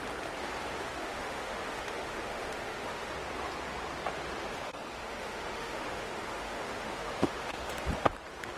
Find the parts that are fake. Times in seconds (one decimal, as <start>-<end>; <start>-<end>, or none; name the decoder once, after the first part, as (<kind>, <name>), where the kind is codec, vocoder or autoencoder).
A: 1.0-3.1 (autoencoder, DAC-VAE); 4.5-7.7